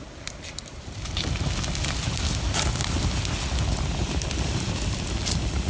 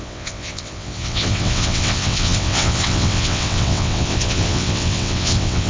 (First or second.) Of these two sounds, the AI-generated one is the second